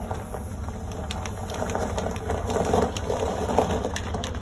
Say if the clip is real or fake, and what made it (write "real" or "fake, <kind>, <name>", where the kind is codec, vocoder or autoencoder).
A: real